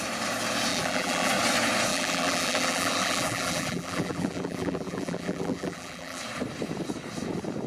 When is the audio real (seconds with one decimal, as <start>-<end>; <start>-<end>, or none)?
0.0-0.7; 1.3-1.9; 6.2-7.7